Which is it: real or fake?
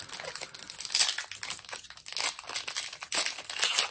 real